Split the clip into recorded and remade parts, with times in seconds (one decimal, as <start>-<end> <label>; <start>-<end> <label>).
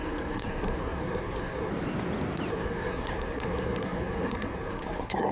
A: 0.0-1.7 remade; 1.7-2.5 recorded; 2.5-5.3 remade